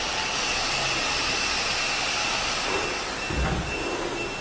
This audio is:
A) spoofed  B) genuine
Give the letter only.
B